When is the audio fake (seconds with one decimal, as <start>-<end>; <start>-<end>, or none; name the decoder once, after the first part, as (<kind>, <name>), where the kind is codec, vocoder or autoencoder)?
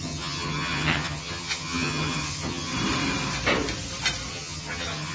0.0-2.7 (vocoder, HiFi-GAN); 4.3-5.1